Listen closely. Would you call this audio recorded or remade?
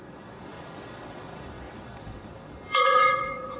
remade